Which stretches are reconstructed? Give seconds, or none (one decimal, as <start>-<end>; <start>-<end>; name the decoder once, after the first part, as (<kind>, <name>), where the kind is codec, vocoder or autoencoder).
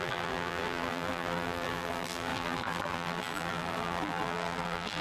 0.0-5.0 (vocoder, BigVGAN v2)